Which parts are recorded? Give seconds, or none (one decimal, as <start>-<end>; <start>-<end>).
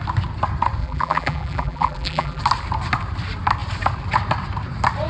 0.0-0.8; 2.4-5.1